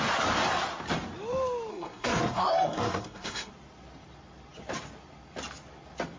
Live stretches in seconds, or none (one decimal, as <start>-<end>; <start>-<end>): 0.0-1.7; 3.5-6.2